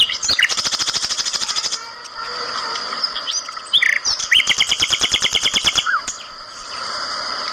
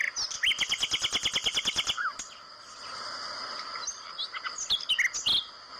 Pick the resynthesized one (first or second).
first